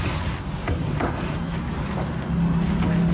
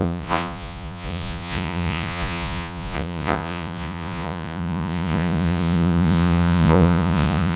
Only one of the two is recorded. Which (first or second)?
first